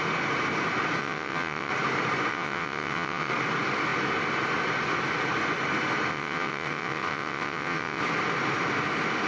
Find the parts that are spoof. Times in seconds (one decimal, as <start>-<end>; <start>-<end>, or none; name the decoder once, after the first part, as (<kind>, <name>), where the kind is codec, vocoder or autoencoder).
1.0-1.7 (vocoder, WaveNeXt); 2.3-3.3; 6.1-8.0